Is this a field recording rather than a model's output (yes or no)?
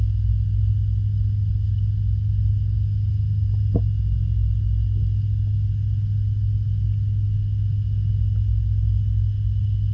yes